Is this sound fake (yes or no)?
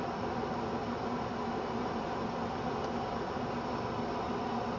no